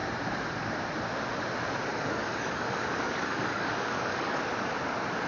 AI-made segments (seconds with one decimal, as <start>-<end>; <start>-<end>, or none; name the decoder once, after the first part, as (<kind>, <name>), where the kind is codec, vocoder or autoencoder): 1.9-4.4 (codec, DAC)